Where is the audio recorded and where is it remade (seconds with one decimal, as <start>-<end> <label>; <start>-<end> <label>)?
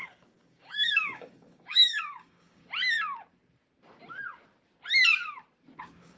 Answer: 0.0-2.6 remade; 2.6-5.8 recorded; 5.8-6.2 remade